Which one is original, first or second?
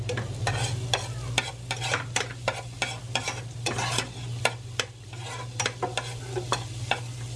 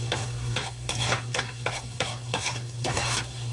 first